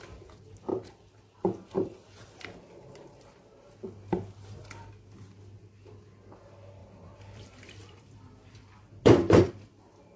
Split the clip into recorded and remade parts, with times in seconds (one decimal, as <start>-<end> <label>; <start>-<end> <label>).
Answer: 0.0-6.8 recorded; 6.8-9.5 remade; 9.5-10.2 recorded